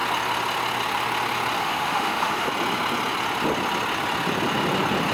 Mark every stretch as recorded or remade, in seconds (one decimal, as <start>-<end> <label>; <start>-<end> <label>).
0.0-1.6 recorded; 1.6-2.5 remade; 2.5-5.1 recorded